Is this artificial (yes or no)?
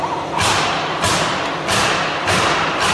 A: no